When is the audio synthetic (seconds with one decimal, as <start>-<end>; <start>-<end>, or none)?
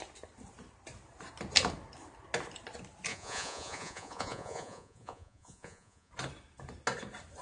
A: 3.1-6.1